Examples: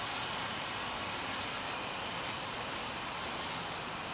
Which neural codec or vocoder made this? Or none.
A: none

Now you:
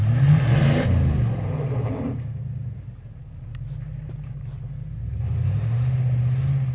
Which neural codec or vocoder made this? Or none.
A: none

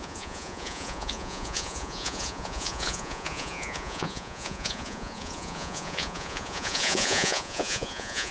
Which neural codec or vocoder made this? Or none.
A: vocoder, Vocos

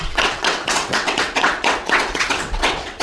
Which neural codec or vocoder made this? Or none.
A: vocoder, WaveNeXt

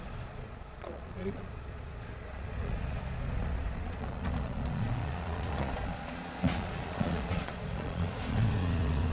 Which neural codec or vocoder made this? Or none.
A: vocoder, Vocos